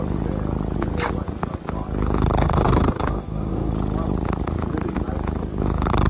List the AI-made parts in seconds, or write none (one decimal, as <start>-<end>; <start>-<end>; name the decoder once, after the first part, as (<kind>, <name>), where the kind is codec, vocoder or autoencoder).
2.4-3.7 (codec, DAC)